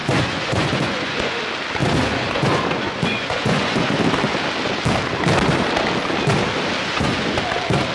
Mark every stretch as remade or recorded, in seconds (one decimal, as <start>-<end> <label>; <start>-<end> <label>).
0.0-1.4 remade; 1.4-1.8 recorded; 1.8-4.0 remade; 4.0-6.8 recorded; 6.8-7.4 remade; 7.4-7.9 recorded